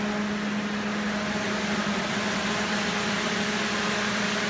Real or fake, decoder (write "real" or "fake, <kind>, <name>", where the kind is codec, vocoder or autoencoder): real